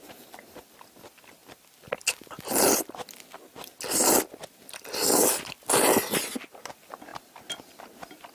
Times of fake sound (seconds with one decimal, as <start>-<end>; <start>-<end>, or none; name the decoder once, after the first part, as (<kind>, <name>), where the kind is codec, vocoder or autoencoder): none